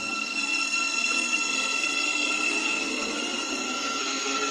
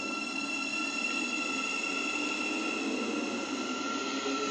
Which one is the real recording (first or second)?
second